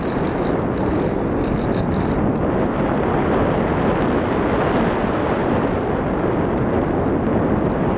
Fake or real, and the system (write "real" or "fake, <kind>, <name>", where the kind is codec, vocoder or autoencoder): real